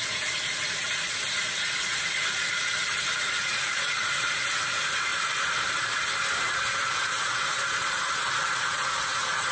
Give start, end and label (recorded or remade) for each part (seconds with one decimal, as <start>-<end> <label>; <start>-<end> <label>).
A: 0.0-5.1 remade; 5.1-6.4 recorded; 6.4-9.5 remade